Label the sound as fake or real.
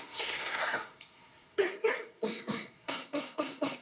fake